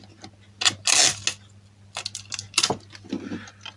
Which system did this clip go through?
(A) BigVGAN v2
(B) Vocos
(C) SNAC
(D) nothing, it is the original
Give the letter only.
D